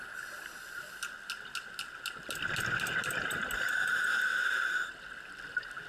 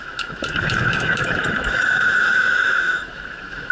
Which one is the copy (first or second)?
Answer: second